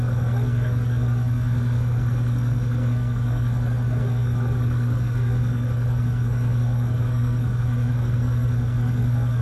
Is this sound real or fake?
fake